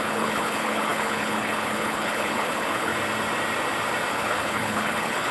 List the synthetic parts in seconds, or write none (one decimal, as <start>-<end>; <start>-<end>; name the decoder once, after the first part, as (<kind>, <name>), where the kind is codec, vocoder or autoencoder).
0.0-2.9 (codec, HILCodec); 4.1-5.3